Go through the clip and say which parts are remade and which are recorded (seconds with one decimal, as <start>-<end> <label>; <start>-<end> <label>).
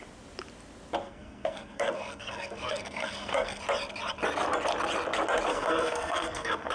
0.0-1.0 recorded; 1.0-3.6 remade; 3.6-5.5 recorded; 5.5-6.7 remade